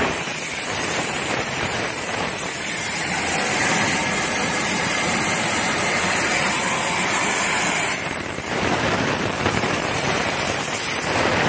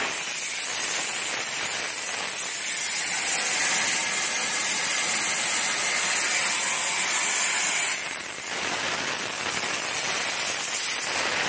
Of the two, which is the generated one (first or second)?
first